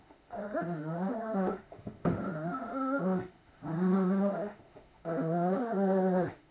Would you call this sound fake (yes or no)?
yes